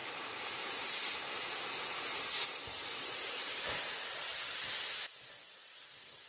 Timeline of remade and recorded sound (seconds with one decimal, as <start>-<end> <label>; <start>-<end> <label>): 0.0-1.5 remade; 1.5-3.4 recorded; 3.4-4.2 remade; 4.2-6.3 recorded